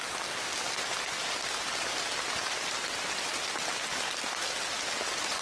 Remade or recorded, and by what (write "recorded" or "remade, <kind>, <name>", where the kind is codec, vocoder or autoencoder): recorded